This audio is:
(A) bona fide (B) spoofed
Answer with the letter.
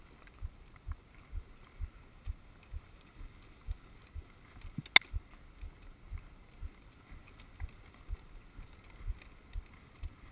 A